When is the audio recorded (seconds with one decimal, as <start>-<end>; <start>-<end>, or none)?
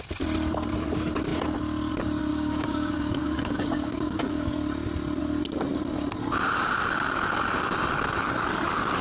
0.0-2.3; 4.4-9.0